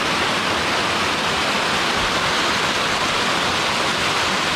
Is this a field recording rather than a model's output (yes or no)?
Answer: yes